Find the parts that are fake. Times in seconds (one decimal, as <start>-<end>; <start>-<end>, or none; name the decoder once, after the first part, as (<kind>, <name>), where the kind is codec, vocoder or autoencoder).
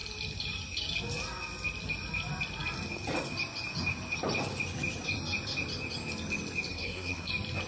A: 6.7-7.3 (codec, SNAC)